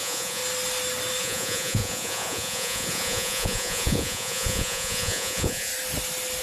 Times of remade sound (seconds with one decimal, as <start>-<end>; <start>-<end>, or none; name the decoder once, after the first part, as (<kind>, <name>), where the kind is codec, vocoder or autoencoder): 0.0-0.4 (vocoder, Vocos); 1.2-5.7